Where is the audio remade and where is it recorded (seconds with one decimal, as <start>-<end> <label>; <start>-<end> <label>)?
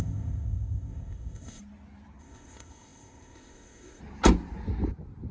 0.0-1.6 remade; 1.6-2.2 recorded; 2.2-4.0 remade; 4.0-5.3 recorded